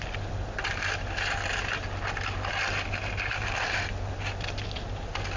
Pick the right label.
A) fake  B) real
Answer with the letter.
B